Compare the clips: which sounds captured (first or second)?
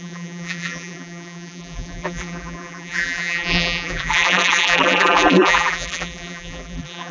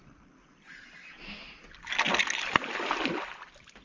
second